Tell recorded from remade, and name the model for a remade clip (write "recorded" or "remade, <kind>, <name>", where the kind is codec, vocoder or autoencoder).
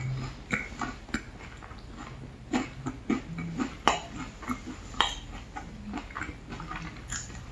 recorded